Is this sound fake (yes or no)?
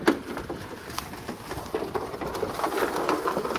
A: no